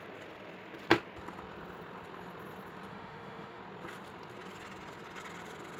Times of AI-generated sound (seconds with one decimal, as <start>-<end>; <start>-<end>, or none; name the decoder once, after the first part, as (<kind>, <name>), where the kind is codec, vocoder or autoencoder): 2.9-3.6 (autoencoder, DAC-VAE)